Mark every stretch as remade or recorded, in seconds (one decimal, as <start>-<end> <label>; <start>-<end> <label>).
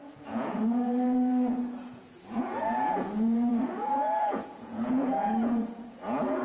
0.0-6.4 remade